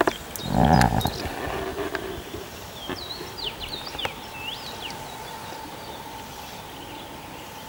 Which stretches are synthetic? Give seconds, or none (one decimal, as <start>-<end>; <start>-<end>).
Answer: 1.7-3.1